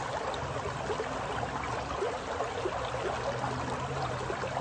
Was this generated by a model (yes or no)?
no